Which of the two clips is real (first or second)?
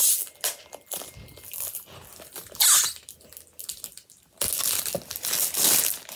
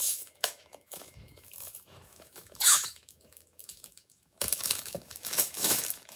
first